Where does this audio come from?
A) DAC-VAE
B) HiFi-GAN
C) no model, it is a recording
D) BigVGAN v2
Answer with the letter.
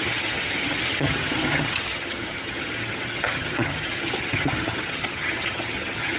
B